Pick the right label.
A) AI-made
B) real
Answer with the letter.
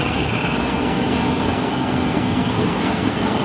A